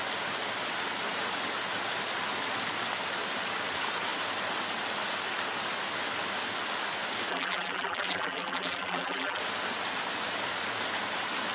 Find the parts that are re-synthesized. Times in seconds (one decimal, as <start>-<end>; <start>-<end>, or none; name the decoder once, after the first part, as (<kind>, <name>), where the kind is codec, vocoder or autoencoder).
7.3-9.4 (vocoder, BigVGAN v2)